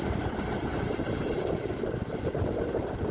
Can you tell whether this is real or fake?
real